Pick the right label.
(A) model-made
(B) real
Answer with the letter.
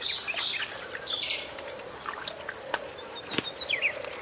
B